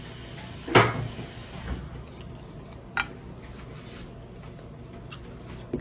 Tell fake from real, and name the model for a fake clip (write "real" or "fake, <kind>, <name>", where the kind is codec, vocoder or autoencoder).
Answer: real